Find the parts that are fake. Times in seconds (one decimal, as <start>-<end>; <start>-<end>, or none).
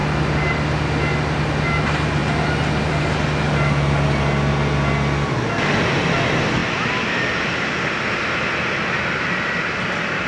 none